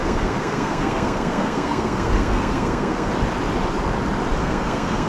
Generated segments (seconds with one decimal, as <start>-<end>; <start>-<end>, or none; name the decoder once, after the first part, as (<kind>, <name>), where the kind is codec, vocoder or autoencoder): 0.0-3.1 (codec, SNAC); 4.4-5.1